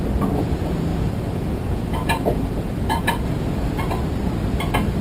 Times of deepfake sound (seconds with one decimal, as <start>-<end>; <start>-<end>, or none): 0.9-3.9